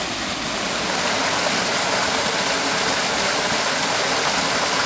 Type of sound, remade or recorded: recorded